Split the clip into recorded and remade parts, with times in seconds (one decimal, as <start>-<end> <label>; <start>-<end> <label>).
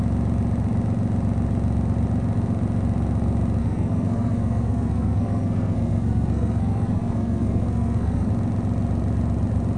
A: 0.0-3.6 recorded; 3.6-8.3 remade; 8.3-9.8 recorded